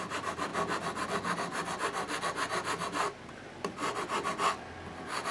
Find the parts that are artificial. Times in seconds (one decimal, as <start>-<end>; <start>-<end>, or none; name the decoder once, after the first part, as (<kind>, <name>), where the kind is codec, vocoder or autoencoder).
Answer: none

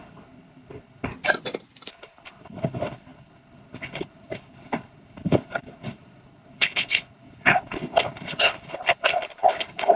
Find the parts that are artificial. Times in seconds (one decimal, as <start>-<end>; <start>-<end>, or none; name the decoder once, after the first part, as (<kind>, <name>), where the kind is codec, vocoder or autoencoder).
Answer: 0.0-1.1 (codec, HILCodec); 1.9-10.0

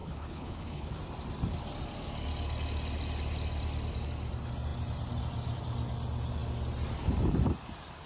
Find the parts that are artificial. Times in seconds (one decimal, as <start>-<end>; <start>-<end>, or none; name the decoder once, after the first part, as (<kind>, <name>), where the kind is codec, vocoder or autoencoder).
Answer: 0.0-0.9 (codec, HILCodec)

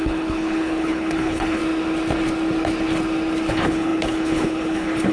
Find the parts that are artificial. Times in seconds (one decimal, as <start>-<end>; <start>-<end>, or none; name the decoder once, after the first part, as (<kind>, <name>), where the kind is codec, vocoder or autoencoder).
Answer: 0.0-1.6 (codec, HILCodec); 3.5-5.1

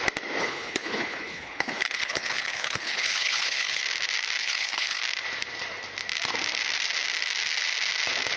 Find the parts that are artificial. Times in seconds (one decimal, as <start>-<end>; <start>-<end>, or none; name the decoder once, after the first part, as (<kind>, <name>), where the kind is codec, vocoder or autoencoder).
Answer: 0.4-3.8 (codec, HILCodec); 4.4-5.0

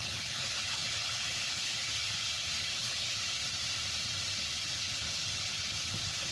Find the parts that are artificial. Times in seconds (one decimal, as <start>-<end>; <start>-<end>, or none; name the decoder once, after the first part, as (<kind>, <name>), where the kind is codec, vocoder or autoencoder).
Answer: 0.0-3.4 (codec, HILCodec); 4.3-6.3

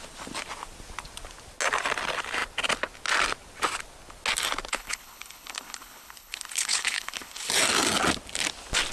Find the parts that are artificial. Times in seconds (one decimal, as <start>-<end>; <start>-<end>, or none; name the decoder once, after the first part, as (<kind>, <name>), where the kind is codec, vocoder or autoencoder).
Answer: 4.7-7.5 (codec, HILCodec)

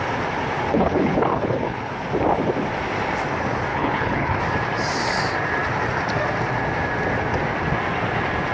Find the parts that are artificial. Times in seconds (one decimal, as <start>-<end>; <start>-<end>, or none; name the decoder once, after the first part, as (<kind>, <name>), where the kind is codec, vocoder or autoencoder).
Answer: 0.7-1.9 (codec, HILCodec); 3.7-4.4